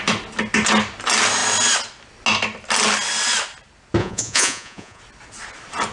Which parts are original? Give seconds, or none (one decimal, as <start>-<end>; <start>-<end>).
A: 0.0-4.0; 5.0-5.9